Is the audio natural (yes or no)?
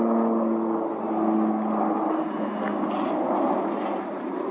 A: yes